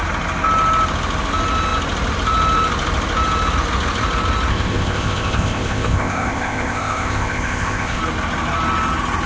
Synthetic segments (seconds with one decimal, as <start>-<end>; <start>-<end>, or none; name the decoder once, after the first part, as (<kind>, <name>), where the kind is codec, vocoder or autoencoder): 4.5-8.0 (codec, ZipCodec)

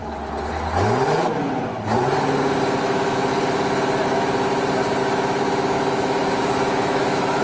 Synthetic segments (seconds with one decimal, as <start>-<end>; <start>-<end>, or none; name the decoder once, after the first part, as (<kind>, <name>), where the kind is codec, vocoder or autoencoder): 2.8-3.3 (autoencoder, DAC-VAE); 5.0-7.4

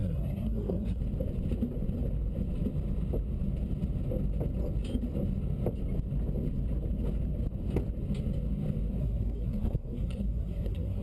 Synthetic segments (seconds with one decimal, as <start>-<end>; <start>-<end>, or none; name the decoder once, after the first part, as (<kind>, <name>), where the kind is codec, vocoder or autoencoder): 0.0-1.0 (codec, SNAC); 9.0-11.0

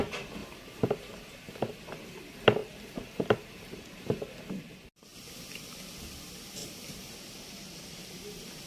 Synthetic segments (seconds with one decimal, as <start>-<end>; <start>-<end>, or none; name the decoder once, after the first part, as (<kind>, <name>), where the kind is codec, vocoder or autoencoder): 0.4-1.8 (vocoder, BigVGAN v2); 2.6-4.5; 6.6-8.1

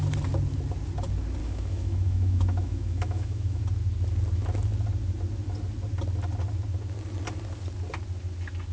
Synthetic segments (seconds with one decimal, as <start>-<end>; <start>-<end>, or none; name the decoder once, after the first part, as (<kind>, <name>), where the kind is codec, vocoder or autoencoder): 1.4-3.6 (autoencoder, DAC-VAE)

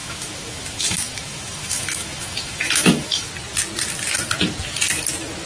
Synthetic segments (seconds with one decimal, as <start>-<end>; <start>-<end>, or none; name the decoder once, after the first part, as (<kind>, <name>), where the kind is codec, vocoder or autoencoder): 0.0-3.3 (autoencoder, DAC-VAE)